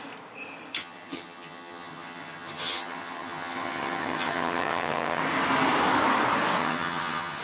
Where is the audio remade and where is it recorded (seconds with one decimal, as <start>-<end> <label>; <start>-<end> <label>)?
0.0-0.8 recorded; 0.8-5.2 remade; 5.2-6.6 recorded; 6.6-7.4 remade